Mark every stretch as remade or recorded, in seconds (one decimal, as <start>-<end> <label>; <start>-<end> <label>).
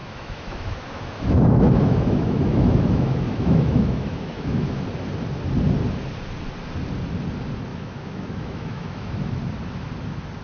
0.0-4.8 remade; 4.8-7.7 recorded; 7.7-9.3 remade; 9.3-10.4 recorded